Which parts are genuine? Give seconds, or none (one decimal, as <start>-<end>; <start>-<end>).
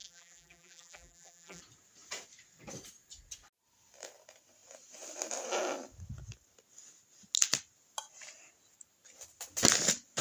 1.6-10.2